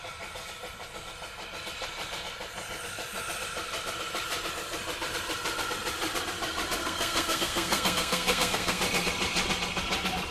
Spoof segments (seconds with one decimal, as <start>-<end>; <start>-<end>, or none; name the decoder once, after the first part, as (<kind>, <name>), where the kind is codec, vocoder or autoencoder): 6.8-8.8 (codec, SNAC)